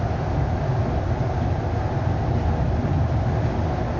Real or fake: real